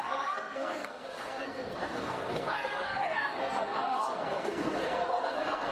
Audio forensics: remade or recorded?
remade